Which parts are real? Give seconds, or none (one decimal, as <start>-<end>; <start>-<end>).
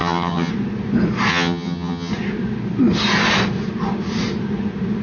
0.5-1.3; 2.1-5.0